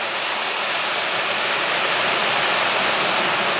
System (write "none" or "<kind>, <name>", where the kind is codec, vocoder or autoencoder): none